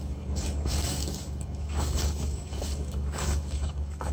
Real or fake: fake